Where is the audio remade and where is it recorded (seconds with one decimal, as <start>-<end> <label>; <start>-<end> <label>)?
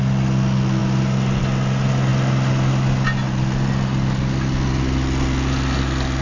0.0-6.2 recorded